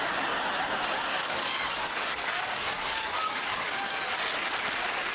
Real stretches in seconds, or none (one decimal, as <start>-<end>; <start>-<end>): 0.0-1.1; 3.8-5.1